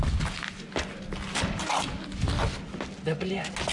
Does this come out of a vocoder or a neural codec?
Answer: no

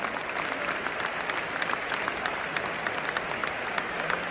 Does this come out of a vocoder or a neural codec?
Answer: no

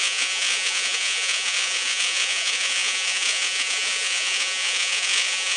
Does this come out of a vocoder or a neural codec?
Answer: yes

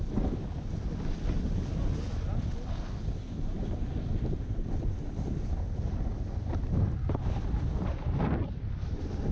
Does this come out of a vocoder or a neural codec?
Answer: no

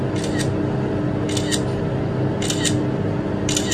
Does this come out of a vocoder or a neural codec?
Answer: no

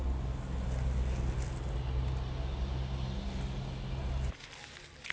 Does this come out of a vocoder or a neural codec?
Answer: no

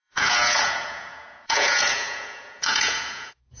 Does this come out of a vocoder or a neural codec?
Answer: yes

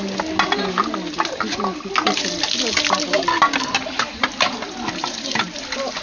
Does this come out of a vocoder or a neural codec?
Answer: no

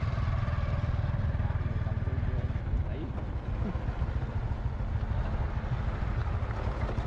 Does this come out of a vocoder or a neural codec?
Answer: no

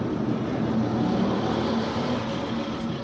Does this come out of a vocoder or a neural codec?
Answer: no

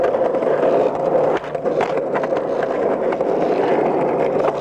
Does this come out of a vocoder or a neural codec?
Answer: no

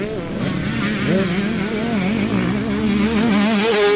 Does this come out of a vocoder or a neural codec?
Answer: no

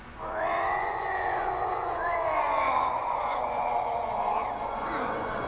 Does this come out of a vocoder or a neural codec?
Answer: yes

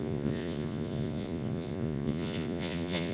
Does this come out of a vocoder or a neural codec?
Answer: yes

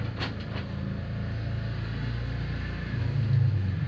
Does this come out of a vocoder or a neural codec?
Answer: no